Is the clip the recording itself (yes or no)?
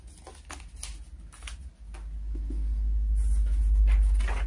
yes